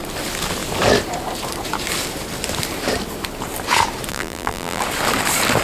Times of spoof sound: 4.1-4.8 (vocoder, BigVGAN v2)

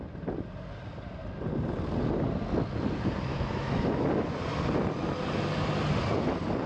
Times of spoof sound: 3.3-3.8 (autoencoder, DAC-VAE)

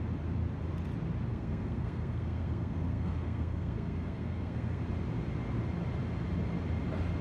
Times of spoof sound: 1.3-4.8 (codec, SNAC)

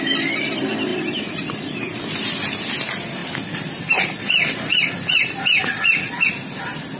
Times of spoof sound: 0.0-3.2 (vocoder, BigVGAN v2); 4.2-4.7; 5.6-7.0

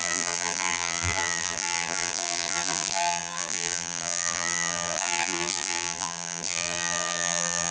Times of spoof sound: 0.0-7.7 (vocoder, BigVGAN v2)

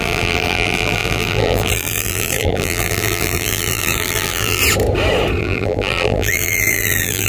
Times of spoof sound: 0.0-4.6 (vocoder, BigVGAN v2); 5.4-7.3